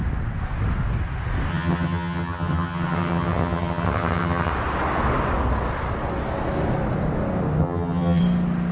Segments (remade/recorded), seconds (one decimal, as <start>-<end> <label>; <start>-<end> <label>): 0.0-1.5 recorded; 1.5-4.5 remade; 4.5-7.6 recorded; 7.6-8.2 remade; 8.2-8.7 recorded